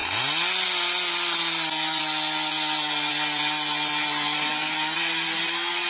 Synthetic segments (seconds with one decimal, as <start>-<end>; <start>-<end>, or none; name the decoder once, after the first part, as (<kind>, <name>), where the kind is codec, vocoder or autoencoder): none